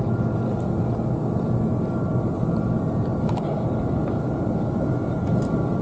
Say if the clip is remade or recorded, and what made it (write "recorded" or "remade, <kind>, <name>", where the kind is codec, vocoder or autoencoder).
recorded